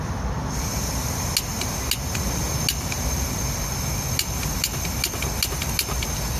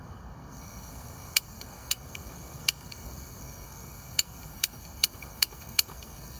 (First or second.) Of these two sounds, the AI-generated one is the second